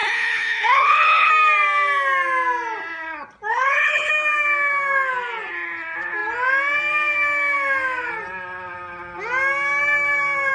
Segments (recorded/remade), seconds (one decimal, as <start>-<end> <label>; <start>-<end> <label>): 0.0-1.3 remade; 1.3-3.5 recorded; 3.5-4.1 remade; 4.1-10.5 recorded